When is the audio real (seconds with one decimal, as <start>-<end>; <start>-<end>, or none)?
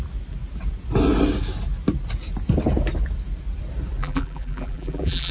0.0-4.0